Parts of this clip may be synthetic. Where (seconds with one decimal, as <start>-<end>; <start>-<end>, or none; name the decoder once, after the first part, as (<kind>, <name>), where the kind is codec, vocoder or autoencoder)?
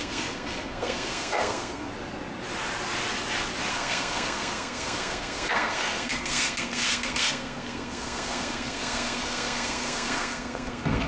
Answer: 0.0-1.9 (codec, SNAC); 3.7-11.1